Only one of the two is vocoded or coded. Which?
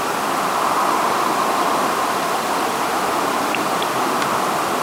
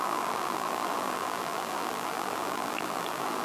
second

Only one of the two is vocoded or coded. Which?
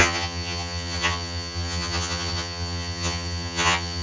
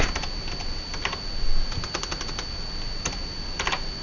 first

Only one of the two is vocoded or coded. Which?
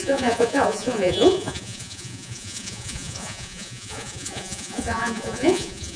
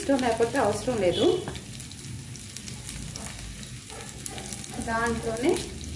first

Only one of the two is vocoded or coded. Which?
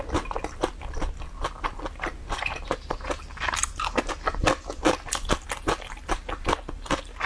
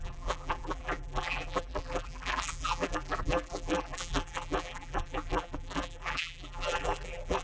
second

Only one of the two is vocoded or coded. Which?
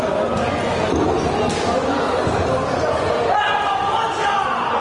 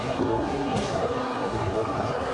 second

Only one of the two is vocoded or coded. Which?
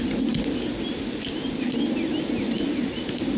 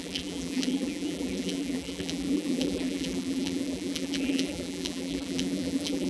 second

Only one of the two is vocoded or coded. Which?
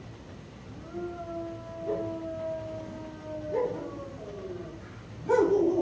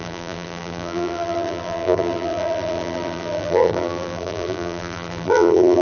second